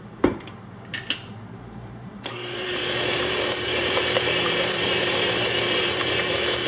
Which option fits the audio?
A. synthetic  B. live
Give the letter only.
A